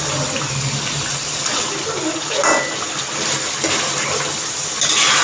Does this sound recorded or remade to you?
recorded